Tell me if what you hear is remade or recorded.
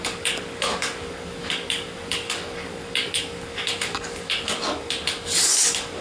remade